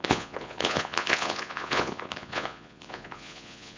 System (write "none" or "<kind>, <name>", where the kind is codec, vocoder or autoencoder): vocoder, Vocos